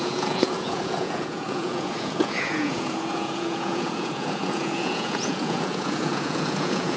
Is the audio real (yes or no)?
no